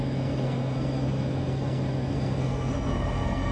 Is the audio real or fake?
fake